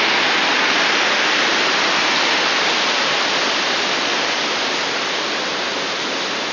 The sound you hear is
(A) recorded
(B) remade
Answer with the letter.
A